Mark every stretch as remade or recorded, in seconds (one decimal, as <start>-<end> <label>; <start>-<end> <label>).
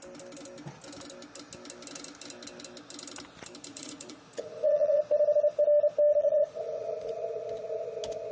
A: 0.0-3.7 recorded; 3.7-5.0 remade; 5.0-6.1 recorded; 6.1-7.2 remade; 7.2-8.3 recorded